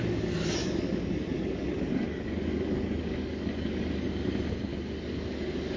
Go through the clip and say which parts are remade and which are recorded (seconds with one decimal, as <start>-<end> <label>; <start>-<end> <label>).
0.0-0.6 recorded; 0.6-4.1 remade; 4.1-4.7 recorded; 4.7-5.8 remade